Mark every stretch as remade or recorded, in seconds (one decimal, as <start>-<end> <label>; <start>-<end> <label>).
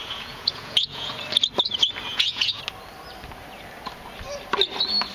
0.0-1.1 remade; 1.1-2.1 recorded; 2.1-2.6 remade; 2.6-5.1 recorded